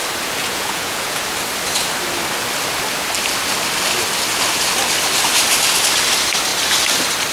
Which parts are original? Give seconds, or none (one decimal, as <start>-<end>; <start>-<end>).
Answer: 0.0-0.4; 1.2-7.3